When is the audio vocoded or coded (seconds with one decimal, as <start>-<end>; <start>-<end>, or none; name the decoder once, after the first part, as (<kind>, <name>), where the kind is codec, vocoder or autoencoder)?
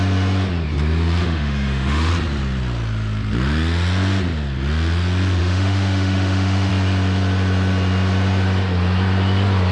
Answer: 1.2-2.1 (autoencoder, DAC-VAE); 5.4-6.7